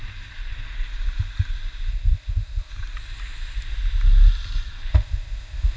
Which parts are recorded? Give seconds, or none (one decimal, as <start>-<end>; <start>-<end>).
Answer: 0.0-1.9; 2.7-4.9